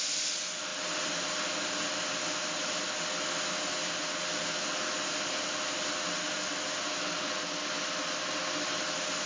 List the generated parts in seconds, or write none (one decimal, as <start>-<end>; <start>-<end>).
none

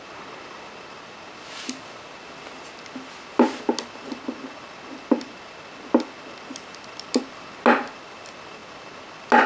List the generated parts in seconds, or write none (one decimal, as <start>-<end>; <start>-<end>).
none

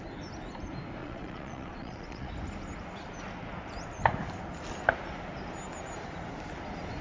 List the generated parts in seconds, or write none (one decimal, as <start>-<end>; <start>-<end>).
1.0-2.3

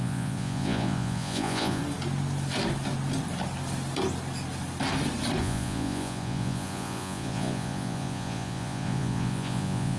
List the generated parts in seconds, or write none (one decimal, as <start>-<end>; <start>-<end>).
0.0-1.8; 5.4-10.0

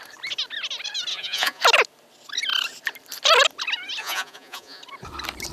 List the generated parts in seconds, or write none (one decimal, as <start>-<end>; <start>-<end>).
1.1-1.6; 4.0-4.8

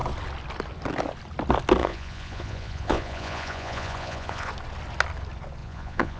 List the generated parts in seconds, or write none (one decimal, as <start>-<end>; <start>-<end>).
1.8-4.5; 5.6-6.2

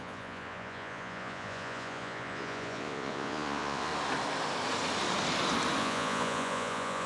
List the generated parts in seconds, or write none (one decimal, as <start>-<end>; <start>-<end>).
0.0-3.9; 5.8-7.1